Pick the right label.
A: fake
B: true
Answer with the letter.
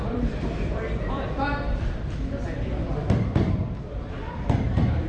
A